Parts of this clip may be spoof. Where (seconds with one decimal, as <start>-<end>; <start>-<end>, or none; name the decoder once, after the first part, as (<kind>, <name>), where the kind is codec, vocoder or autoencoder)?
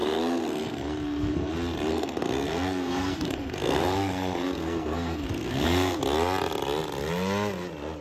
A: 0.0-1.5 (codec, SNAC); 1.9-6.0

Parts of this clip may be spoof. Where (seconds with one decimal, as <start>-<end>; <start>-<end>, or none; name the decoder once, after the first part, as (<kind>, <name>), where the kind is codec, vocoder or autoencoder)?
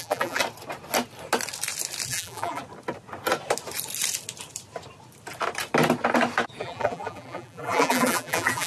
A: 0.0-0.4 (vocoder, BigVGAN v2); 2.1-2.6; 6.6-8.7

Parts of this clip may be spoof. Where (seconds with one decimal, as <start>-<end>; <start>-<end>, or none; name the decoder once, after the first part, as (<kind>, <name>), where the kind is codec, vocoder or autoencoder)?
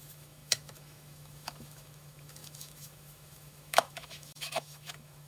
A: 0.0-5.3 (autoencoder, DAC-VAE)